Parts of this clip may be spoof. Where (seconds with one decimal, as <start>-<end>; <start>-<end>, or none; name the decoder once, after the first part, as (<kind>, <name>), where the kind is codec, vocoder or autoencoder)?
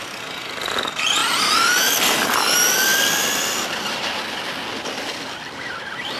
1.2-1.8 (vocoder, BigVGAN v2)